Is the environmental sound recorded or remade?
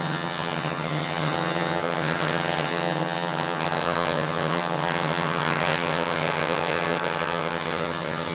remade